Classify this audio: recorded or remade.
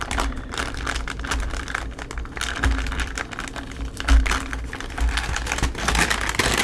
recorded